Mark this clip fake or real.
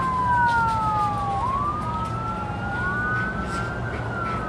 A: real